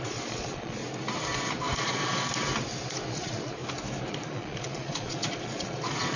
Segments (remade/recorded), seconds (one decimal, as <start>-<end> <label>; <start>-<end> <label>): 0.0-0.8 remade; 0.8-1.8 recorded; 1.8-2.2 remade; 2.2-3.1 recorded; 3.1-3.6 remade; 3.6-4.1 recorded; 4.1-6.2 remade